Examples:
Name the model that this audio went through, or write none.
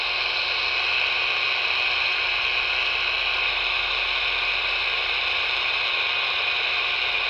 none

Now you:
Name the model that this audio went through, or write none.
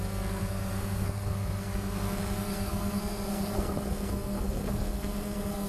codec, SNAC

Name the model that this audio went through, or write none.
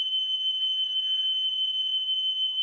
none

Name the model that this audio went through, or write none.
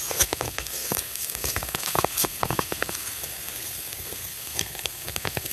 codec, SNAC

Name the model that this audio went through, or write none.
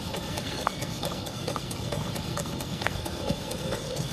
codec, SNAC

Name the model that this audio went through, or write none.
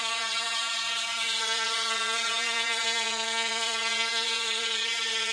vocoder, Vocos